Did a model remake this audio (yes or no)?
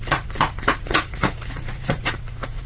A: yes